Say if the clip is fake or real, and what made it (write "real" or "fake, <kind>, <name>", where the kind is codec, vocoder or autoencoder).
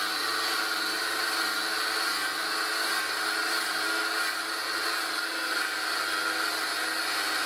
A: real